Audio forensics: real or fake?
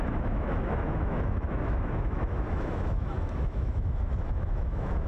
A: fake